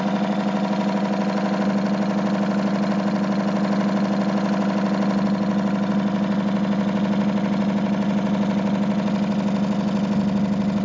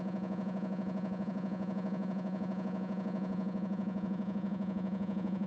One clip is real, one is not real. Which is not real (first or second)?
second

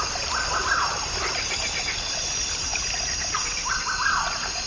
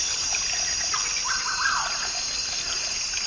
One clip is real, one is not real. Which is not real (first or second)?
first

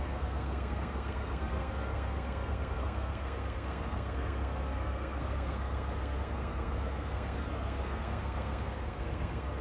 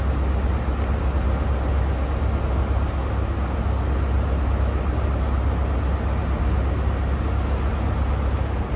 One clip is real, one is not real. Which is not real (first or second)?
first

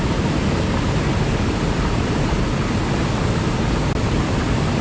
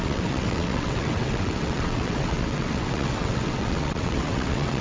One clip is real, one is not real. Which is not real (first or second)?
second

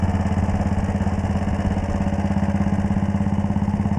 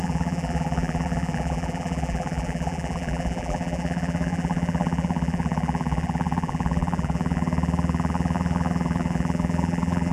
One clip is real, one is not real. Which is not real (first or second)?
second